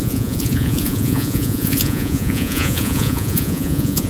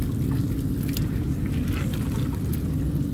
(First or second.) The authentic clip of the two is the second